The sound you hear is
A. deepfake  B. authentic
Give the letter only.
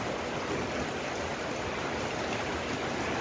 B